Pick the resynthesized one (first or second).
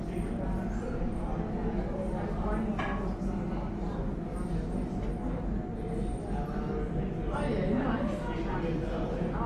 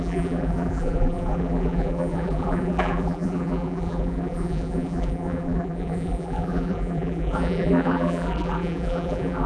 second